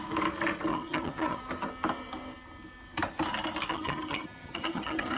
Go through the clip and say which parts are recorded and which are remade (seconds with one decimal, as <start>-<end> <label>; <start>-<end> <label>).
0.0-0.7 recorded; 0.7-1.4 remade; 1.4-3.7 recorded; 3.7-5.2 remade